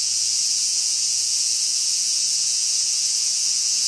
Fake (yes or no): yes